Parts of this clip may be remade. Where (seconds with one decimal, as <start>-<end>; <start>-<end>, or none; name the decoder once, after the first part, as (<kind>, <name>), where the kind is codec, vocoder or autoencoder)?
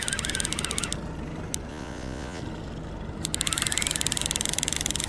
1.7-2.4 (vocoder, Vocos)